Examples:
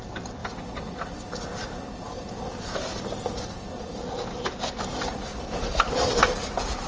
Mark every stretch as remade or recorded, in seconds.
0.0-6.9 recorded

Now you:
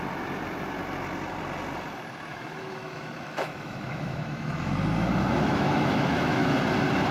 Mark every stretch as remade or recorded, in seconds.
0.0-2.3 recorded; 2.3-6.6 remade; 6.6-7.1 recorded

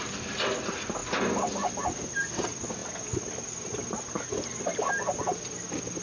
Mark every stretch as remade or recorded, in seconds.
0.0-6.0 recorded